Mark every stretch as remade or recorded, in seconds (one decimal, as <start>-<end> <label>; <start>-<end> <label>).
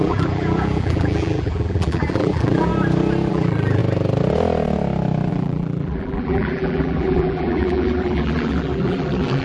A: 0.0-2.7 remade; 2.7-3.3 recorded; 3.3-3.8 remade; 3.8-5.3 recorded; 5.3-9.4 remade